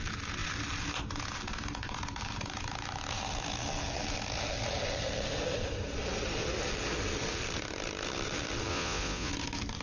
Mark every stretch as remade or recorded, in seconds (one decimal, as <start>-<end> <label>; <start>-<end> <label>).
0.0-8.7 recorded; 8.7-9.3 remade; 9.3-9.8 recorded

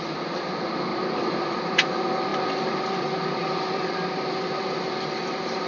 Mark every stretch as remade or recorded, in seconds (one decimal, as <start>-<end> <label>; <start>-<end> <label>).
0.0-0.9 recorded; 0.9-1.6 remade; 1.6-2.3 recorded; 2.3-5.7 remade

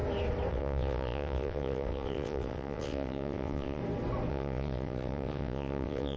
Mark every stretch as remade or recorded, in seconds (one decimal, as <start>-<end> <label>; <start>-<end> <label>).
0.0-0.5 recorded; 0.5-3.8 remade; 3.8-4.3 recorded; 4.3-6.2 remade

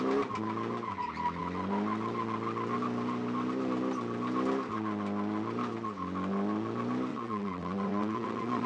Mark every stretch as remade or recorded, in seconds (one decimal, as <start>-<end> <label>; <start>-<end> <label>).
0.0-7.1 recorded; 7.1-8.7 remade

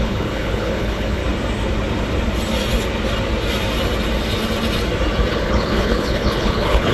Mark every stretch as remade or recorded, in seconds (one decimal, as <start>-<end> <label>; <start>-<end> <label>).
0.0-1.2 remade; 1.2-5.3 recorded; 5.3-6.9 remade

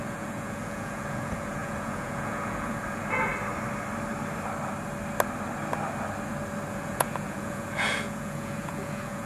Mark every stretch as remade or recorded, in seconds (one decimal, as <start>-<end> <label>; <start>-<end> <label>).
0.0-3.3 remade; 3.3-6.7 recorded; 6.7-9.3 remade

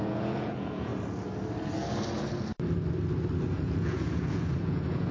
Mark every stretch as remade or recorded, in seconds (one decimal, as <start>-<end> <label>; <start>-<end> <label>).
0.0-0.9 remade; 0.9-3.4 recorded; 3.4-5.1 remade

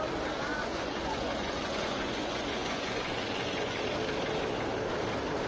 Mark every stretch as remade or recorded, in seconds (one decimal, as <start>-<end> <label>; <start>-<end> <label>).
0.0-0.5 recorded; 0.5-3.8 remade; 3.8-5.5 recorded